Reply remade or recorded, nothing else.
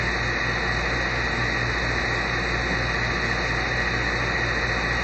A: recorded